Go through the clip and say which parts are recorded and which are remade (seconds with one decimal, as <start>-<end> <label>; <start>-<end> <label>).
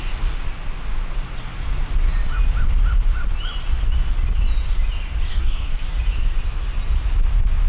0.0-5.3 recorded; 5.3-5.8 remade; 5.8-7.7 recorded